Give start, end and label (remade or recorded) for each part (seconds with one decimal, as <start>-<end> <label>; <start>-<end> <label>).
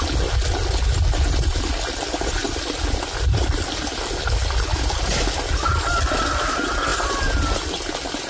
0.0-8.3 recorded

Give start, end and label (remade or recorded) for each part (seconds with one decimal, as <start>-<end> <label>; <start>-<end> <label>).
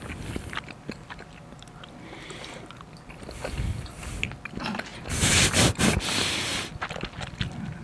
0.0-7.8 recorded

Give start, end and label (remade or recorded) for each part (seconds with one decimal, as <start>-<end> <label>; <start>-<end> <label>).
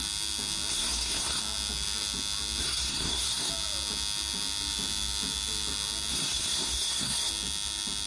0.0-0.7 recorded; 0.7-1.4 remade; 1.4-2.6 recorded; 2.6-3.5 remade; 3.5-6.1 recorded; 6.1-7.3 remade; 7.3-8.1 recorded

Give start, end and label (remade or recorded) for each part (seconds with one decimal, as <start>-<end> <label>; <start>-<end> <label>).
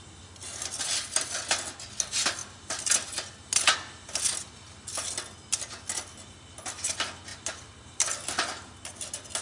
0.0-9.4 recorded